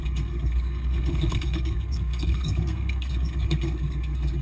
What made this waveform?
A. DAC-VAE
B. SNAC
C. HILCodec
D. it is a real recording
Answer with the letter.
B